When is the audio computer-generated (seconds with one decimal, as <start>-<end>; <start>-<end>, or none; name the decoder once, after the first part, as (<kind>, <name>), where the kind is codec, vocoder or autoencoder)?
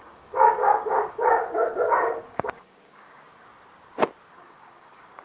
0.0-3.5 (codec, DAC); 4.3-5.2